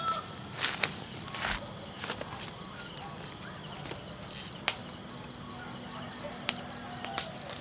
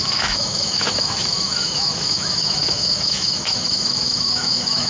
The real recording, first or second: first